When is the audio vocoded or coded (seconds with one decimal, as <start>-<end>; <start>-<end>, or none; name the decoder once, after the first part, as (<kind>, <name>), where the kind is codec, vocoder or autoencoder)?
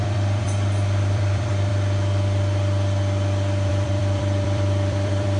0.0-1.7 (vocoder, BigVGAN v2); 3.7-5.4